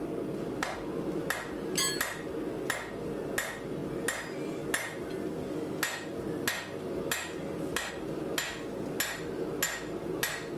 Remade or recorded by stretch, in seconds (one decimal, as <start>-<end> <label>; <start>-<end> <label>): 0.0-10.6 recorded